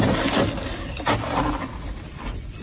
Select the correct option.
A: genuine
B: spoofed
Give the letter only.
A